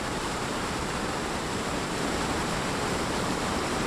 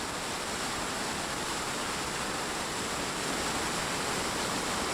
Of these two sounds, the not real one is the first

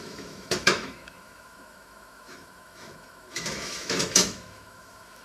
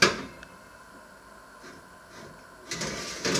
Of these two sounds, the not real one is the first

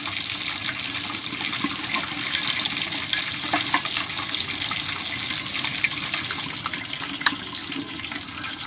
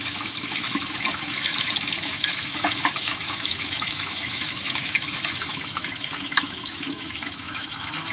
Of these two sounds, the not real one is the second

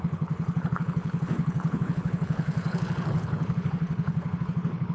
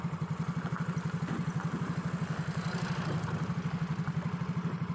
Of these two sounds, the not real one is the first